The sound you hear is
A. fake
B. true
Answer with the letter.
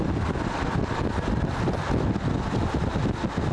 B